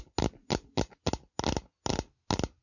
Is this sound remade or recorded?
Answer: recorded